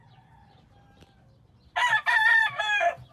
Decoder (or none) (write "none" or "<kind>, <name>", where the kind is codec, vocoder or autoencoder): vocoder, BigVGAN v2